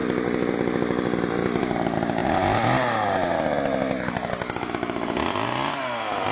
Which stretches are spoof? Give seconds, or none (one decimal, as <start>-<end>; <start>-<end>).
0.0-1.6